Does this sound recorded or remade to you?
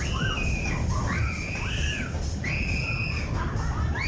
recorded